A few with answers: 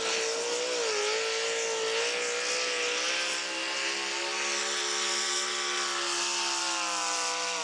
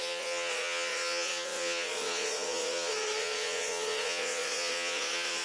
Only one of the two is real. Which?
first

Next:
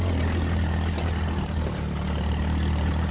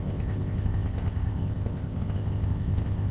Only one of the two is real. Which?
first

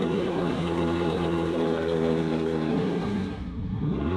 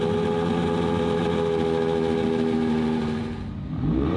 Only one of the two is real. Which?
second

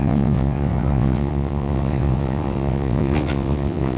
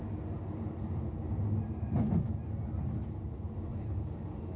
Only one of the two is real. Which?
second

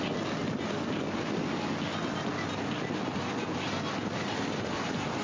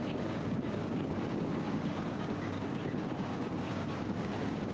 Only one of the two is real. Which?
first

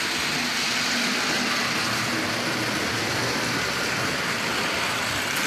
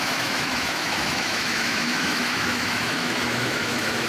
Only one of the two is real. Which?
first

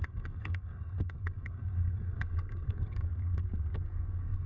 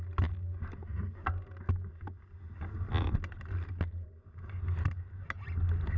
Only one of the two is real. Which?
second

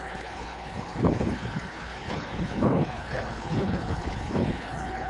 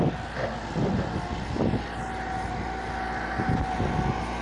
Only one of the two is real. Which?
second